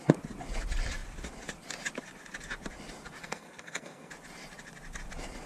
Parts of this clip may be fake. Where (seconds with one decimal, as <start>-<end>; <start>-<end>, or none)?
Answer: 3.2-4.1